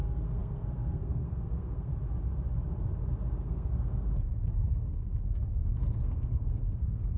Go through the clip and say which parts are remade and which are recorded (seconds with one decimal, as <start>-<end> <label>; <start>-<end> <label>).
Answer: 0.0-1.9 remade; 1.9-3.4 recorded; 3.4-7.2 remade